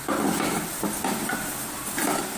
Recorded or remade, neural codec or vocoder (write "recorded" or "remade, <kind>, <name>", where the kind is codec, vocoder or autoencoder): remade, vocoder, BigVGAN v2